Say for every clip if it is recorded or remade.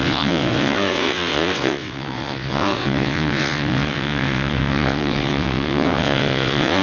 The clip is remade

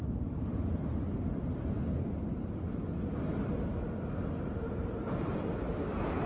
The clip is recorded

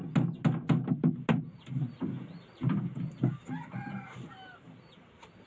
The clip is recorded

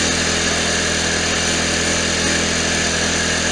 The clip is recorded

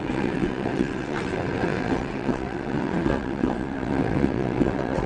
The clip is remade